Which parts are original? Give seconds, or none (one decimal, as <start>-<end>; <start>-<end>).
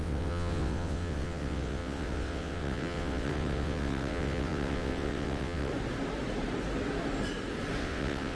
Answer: 5.7-7.8